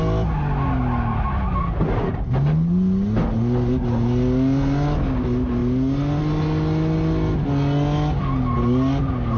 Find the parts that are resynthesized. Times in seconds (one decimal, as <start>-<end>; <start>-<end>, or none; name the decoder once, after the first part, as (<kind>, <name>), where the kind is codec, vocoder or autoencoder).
none

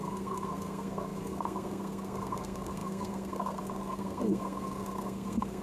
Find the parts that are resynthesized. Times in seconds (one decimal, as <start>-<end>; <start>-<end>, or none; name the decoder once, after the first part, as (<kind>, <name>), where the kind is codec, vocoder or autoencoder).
0.0-5.6 (codec, SNAC)

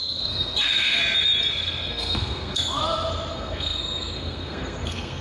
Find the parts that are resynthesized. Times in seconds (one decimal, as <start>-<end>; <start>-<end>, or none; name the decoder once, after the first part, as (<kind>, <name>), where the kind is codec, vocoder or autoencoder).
0.0-1.0 (codec, SNAC); 1.5-2.8; 3.3-5.2

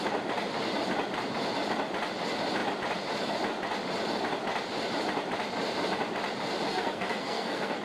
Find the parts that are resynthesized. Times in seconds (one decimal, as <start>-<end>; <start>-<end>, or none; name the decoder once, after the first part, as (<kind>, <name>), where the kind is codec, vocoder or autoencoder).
6.7-7.8 (codec, SNAC)

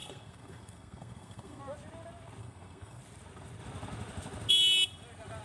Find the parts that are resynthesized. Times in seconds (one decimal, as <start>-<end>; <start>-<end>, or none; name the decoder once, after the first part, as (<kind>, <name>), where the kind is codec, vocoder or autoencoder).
0.0-1.6 (codec, SNAC); 2.4-3.0

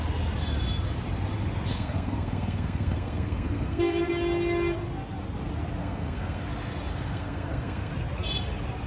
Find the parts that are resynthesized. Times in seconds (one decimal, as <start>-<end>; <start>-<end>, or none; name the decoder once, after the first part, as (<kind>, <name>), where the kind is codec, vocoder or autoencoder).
1.7-4.0 (codec, SNAC); 5.8-6.4; 6.9-7.9